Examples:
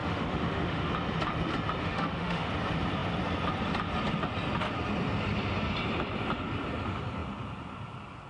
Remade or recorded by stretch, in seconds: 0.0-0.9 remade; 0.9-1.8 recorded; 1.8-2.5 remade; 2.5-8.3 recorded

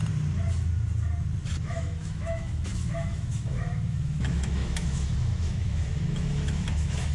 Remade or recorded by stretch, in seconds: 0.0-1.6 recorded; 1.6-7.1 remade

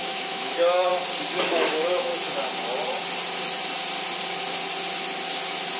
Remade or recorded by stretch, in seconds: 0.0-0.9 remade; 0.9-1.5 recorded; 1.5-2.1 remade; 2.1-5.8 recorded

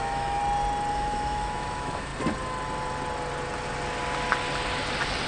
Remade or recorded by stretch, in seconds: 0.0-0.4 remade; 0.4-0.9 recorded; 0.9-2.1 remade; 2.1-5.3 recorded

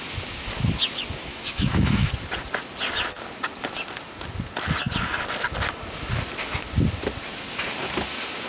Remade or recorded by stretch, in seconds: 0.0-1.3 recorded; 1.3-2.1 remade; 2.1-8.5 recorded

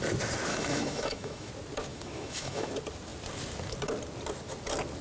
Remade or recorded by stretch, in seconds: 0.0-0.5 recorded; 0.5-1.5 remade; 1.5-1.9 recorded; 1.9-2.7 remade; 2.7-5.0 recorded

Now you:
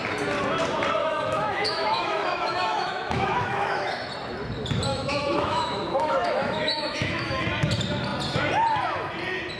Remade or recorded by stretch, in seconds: 0.0-1.0 recorded; 1.0-4.1 remade; 4.1-4.9 recorded; 4.9-7.4 remade; 7.4-9.6 recorded